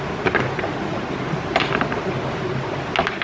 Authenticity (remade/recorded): recorded